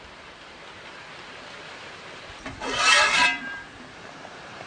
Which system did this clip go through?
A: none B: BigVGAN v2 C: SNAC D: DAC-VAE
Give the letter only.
B